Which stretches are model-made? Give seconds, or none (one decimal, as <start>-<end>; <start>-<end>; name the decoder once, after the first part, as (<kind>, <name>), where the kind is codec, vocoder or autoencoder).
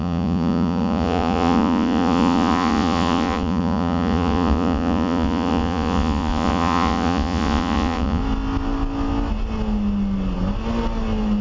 0.0-8.2 (vocoder, Vocos)